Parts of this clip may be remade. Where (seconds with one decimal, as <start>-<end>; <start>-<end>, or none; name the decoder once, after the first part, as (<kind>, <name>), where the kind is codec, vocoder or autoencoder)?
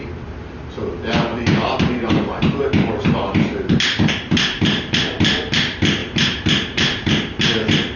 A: 1.3-5.0 (vocoder, BigVGAN v2); 6.0-8.0